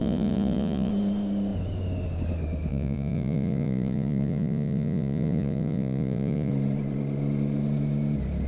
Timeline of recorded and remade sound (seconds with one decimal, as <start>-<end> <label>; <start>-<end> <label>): 0.0-0.9 remade; 0.9-2.7 recorded; 2.7-6.5 remade; 6.5-8.5 recorded